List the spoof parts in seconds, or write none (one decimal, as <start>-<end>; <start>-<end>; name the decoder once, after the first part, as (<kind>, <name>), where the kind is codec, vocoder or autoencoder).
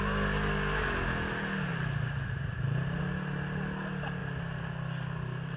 1.7-3.0 (vocoder, BigVGAN v2)